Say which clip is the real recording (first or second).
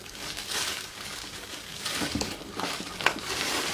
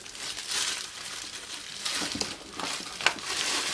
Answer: second